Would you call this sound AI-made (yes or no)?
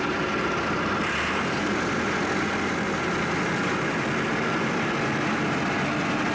no